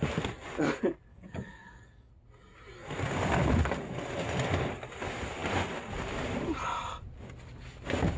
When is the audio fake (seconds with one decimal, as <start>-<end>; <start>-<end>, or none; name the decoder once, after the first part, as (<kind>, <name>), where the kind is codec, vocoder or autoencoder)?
1.1-2.1 (codec, DAC)